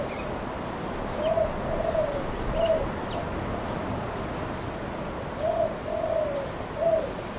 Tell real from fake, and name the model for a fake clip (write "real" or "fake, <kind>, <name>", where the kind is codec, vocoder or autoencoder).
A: real